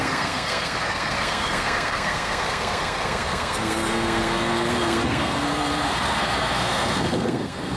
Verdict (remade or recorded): remade